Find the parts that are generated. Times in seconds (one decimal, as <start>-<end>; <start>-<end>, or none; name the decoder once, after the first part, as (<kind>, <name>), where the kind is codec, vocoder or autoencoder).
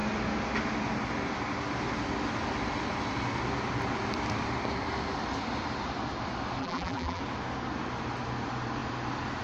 6.6-7.2 (vocoder, BigVGAN v2)